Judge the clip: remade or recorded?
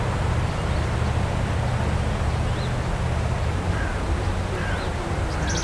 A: recorded